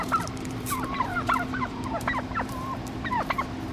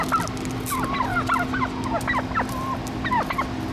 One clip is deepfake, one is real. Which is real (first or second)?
second